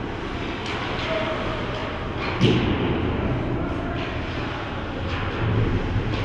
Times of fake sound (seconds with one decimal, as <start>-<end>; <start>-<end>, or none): none